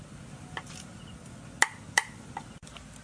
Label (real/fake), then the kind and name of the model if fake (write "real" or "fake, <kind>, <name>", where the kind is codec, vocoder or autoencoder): real